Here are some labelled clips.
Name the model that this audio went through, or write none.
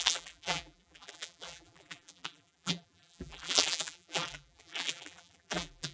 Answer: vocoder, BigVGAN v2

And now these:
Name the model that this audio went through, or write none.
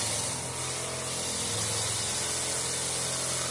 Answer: none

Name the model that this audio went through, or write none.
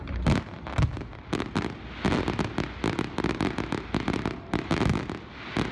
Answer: none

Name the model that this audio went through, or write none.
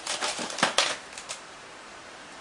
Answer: vocoder, BigVGAN v2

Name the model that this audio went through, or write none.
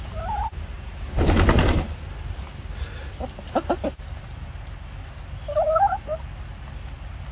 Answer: none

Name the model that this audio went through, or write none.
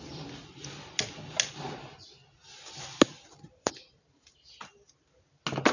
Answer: none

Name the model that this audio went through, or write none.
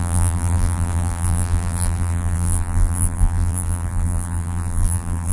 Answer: vocoder, BigVGAN v2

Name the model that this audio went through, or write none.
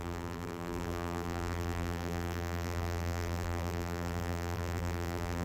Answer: vocoder, BigVGAN v2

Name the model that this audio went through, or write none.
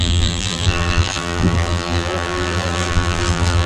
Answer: vocoder, BigVGAN v2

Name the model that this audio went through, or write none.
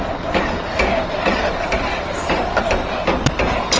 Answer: none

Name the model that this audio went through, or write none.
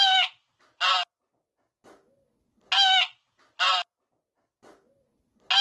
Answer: none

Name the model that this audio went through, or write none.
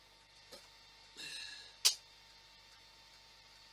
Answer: none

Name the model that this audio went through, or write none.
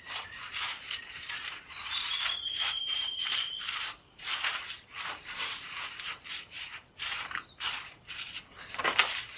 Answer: vocoder, BigVGAN v2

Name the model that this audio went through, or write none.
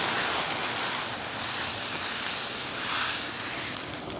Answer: none